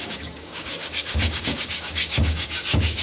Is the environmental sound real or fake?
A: fake